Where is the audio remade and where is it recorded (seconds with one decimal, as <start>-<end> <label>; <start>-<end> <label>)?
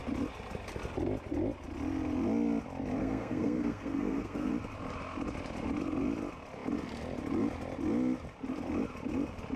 0.0-3.0 recorded; 3.0-4.5 remade; 4.5-9.6 recorded